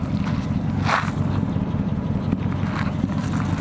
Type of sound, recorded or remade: recorded